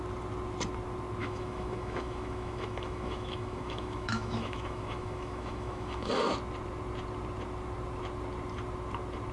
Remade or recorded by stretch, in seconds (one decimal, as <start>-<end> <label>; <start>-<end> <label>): 0.0-1.2 recorded; 1.2-6.1 remade; 6.1-9.3 recorded